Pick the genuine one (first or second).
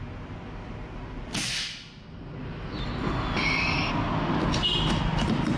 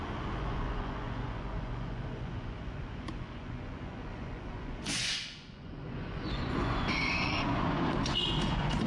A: first